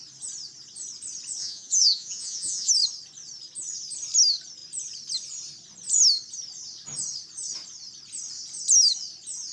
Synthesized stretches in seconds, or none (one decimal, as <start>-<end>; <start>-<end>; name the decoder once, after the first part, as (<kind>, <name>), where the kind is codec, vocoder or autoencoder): 1.4-2.7 (vocoder, Vocos)